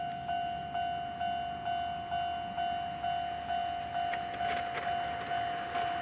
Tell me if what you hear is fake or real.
real